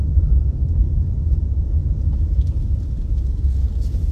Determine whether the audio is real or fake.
fake